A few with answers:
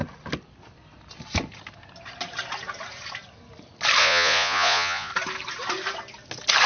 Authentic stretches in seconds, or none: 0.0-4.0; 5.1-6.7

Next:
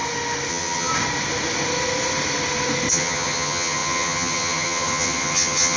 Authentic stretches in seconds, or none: 0.0-0.5; 0.9-2.9

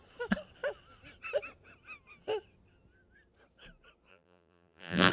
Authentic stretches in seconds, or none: 0.0-4.1

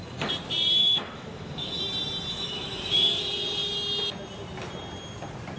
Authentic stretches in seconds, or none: 0.0-0.8; 1.8-2.3; 3.2-5.6

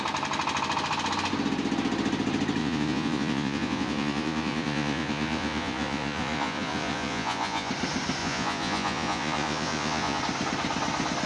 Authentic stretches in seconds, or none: 0.0-2.6; 7.7-8.2; 10.2-11.3

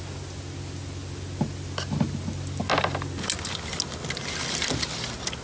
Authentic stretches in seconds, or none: 0.0-5.4

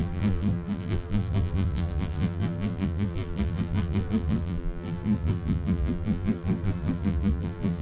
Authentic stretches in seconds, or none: none

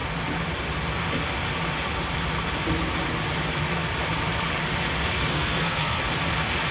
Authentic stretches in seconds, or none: 0.0-5.3; 6.0-6.7